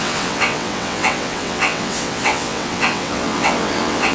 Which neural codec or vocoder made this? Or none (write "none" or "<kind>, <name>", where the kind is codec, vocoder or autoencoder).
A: vocoder, WaveNeXt